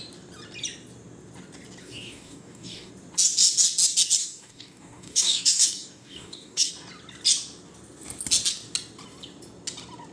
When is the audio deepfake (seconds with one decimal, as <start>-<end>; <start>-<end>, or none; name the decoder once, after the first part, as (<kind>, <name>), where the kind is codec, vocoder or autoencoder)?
1.8-2.9 (codec, DAC); 4.2-6.7